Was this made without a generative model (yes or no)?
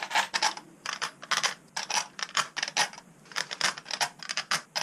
yes